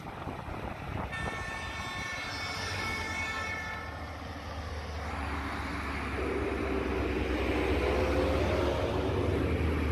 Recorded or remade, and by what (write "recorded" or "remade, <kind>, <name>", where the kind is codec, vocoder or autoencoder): recorded